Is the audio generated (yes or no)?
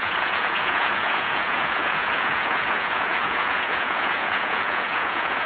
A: yes